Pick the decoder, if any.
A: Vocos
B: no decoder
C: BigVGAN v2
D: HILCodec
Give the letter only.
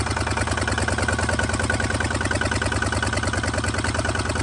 B